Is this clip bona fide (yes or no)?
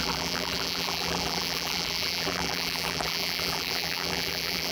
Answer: no